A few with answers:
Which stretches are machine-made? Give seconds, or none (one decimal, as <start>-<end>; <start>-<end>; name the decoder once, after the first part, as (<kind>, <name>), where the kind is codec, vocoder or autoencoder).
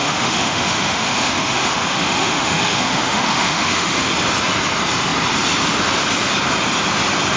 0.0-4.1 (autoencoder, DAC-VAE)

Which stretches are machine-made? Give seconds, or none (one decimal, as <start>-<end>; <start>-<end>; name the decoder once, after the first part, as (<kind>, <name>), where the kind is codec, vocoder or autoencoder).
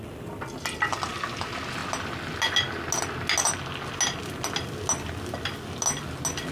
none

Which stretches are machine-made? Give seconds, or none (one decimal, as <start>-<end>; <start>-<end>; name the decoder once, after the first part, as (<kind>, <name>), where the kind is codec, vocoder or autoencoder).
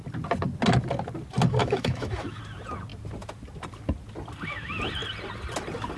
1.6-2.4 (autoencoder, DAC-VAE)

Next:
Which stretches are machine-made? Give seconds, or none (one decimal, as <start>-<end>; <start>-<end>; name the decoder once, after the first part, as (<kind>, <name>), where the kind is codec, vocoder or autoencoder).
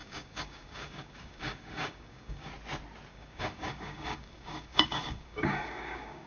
0.0-2.5 (codec, DAC); 3.1-6.3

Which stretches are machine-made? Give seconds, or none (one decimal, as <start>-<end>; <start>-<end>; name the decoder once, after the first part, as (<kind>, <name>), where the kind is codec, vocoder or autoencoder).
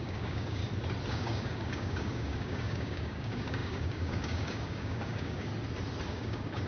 0.0-0.6 (codec, DAC); 1.1-5.5; 6.1-6.7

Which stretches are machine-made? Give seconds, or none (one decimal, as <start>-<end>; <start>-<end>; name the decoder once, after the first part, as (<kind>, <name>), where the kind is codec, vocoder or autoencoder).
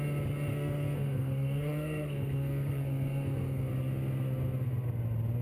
0.5-3.7 (codec, SNAC)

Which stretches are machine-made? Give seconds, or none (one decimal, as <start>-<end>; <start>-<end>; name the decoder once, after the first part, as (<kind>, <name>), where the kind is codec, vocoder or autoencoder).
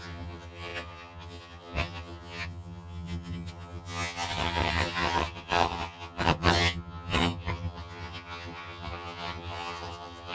0.0-10.3 (vocoder, HiFi-GAN)